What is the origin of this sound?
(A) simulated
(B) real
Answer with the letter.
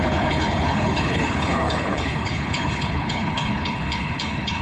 A